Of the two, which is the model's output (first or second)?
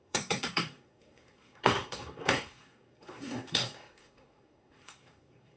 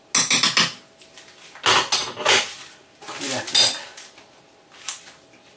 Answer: first